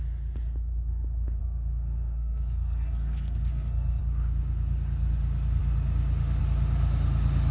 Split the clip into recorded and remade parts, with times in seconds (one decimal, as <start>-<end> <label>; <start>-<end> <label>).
0.0-1.4 recorded; 1.4-4.0 remade; 4.0-7.5 recorded